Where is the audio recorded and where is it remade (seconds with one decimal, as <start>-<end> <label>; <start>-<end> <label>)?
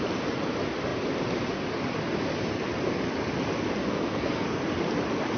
0.0-3.8 recorded; 3.8-4.6 remade; 4.6-5.4 recorded